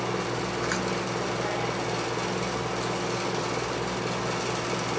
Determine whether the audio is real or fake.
real